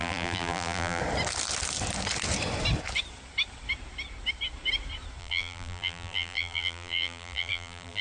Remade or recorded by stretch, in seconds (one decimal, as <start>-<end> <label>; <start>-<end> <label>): 0.0-1.0 remade; 1.0-5.2 recorded; 5.2-8.0 remade